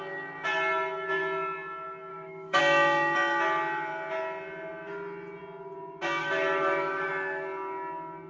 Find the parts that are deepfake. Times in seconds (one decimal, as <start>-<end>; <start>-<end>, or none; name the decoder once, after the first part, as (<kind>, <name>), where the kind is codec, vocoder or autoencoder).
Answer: 2.1-2.6 (autoencoder, DAC-VAE); 6.2-7.1